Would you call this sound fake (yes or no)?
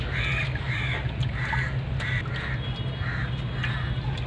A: no